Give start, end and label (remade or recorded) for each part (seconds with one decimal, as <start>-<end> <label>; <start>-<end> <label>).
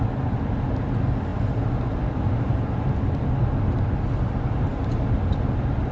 0.0-5.9 recorded